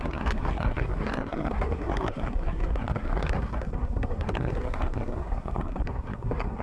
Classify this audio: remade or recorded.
remade